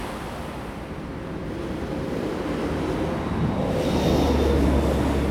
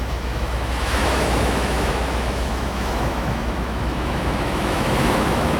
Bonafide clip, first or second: first